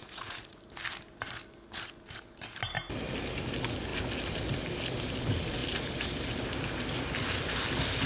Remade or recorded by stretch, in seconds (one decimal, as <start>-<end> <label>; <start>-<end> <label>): 0.0-0.6 remade; 0.6-8.1 recorded